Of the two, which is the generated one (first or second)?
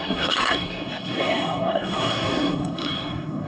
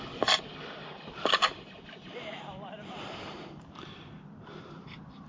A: first